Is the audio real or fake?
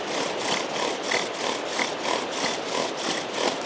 real